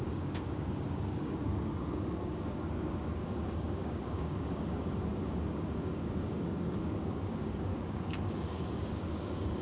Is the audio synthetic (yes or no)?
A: yes